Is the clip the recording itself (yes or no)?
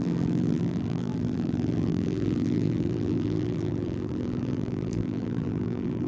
no